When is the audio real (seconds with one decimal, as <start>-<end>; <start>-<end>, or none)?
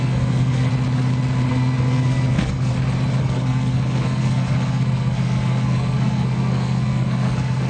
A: 0.7-1.5; 2.7-3.2